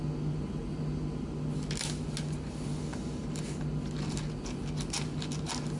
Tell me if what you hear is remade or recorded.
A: recorded